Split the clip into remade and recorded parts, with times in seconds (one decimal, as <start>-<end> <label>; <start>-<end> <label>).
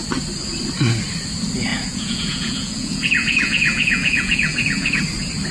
0.0-1.7 recorded; 1.7-5.0 remade; 5.0-5.5 recorded